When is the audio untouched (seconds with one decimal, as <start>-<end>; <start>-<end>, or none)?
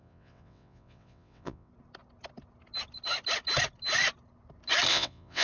1.7-4.9